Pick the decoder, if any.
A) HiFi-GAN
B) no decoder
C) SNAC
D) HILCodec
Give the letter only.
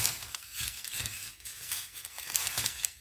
C